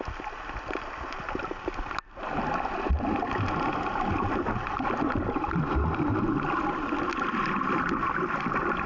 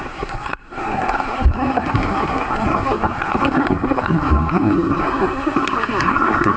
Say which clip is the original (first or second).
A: first